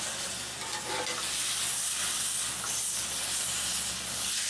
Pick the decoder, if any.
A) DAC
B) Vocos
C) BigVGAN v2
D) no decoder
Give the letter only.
D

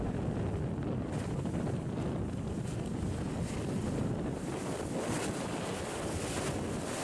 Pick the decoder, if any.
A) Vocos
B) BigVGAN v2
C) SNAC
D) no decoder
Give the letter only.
D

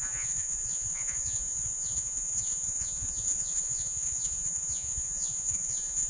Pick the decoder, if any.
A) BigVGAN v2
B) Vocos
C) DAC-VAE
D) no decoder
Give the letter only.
B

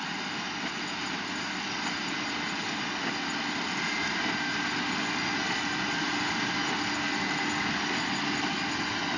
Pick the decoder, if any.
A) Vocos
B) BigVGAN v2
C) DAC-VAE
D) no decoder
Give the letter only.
D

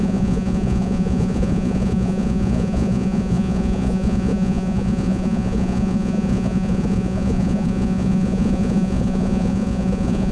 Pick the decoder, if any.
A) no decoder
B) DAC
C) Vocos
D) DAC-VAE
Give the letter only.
C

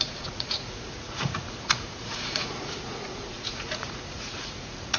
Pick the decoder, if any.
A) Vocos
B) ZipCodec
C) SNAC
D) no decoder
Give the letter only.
A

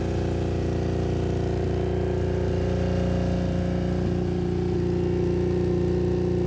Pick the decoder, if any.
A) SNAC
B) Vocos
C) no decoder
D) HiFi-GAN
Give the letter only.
C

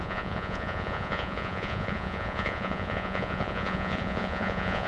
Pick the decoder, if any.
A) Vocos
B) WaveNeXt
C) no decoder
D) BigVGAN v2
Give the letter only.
A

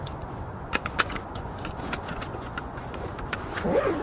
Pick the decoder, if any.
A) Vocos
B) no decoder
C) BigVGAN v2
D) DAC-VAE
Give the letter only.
A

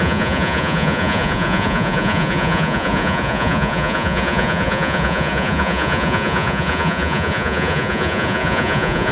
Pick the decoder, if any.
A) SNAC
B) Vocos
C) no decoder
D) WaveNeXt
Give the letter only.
B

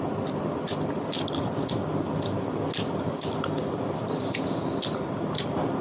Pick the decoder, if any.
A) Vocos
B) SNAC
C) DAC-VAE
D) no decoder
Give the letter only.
D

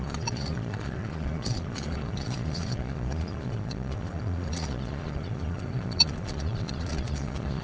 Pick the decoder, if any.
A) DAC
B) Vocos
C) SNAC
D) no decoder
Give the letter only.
B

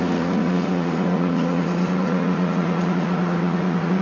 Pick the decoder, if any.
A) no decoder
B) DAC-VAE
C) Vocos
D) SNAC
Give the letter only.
C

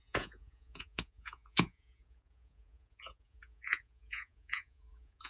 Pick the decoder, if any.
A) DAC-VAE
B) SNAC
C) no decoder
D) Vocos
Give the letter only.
D